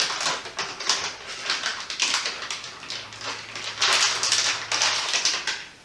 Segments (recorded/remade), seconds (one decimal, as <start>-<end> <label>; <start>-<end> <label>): 0.0-5.8 recorded